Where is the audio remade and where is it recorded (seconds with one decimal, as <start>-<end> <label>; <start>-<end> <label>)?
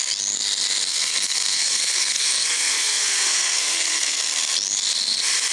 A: 0.0-0.9 recorded; 0.9-4.2 remade; 4.2-5.5 recorded